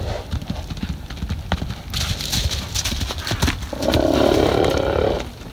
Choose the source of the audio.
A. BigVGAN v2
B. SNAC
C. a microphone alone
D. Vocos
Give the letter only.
C